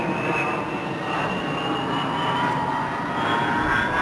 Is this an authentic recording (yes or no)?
yes